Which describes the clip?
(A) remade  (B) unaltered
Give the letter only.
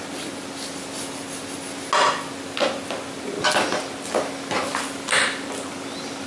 B